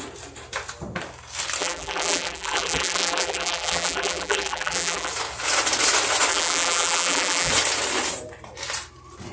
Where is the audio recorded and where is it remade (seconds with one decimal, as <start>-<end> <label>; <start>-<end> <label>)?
0.0-1.6 recorded; 1.6-5.1 remade; 5.1-6.3 recorded; 6.3-7.5 remade; 7.5-9.3 recorded